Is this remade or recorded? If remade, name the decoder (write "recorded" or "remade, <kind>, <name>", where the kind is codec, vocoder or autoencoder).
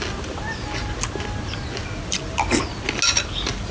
recorded